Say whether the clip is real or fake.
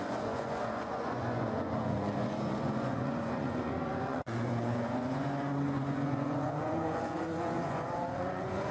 fake